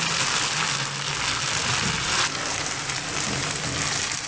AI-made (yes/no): no